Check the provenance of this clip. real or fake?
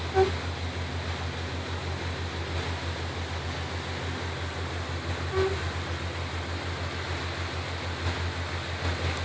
real